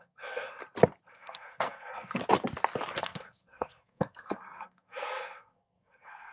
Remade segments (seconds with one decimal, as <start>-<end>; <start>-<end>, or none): 0.0-0.6; 1.1-2.2; 3.0-6.3